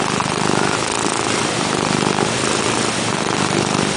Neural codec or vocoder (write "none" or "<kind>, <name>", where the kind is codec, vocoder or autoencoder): none